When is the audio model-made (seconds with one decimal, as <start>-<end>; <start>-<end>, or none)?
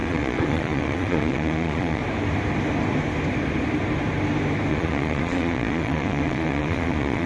0.0-2.0; 4.7-7.3